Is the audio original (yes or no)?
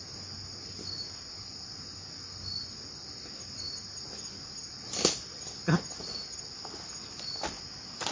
yes